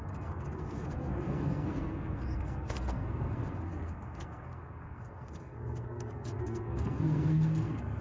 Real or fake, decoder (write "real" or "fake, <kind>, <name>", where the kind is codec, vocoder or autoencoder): fake, codec, SNAC